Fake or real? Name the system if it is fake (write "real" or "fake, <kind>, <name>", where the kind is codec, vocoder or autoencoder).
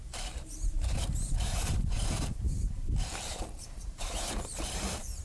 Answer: fake, vocoder, BigVGAN v2